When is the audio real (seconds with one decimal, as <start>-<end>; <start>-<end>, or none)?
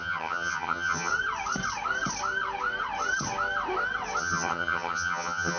1.1-4.2